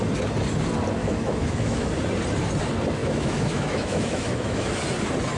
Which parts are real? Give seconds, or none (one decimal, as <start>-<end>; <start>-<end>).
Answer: 0.0-1.0; 1.9-3.0; 4.8-5.4